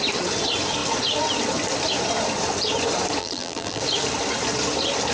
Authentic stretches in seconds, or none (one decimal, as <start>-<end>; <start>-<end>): 0.0-3.2; 3.8-5.1